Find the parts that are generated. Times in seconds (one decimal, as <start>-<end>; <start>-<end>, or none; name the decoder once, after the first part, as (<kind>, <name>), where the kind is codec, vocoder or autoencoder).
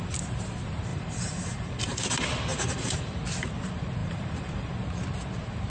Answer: 0.9-1.8 (vocoder, BigVGAN v2); 2.5-3.2; 4.0-4.7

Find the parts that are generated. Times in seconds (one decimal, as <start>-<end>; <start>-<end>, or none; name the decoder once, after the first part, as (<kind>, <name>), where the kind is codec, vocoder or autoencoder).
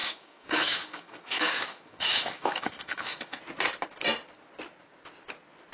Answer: 0.0-3.4 (autoencoder, DAC-VAE)